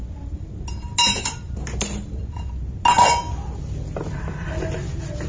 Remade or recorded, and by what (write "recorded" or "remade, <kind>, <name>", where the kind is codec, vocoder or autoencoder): recorded